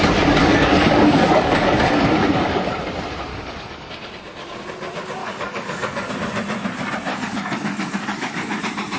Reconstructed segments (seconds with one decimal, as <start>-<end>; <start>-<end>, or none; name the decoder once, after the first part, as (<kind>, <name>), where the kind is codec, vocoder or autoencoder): 0.4-2.7 (codec, DAC); 3.3-3.9; 5.2-6.1; 7.1-8.6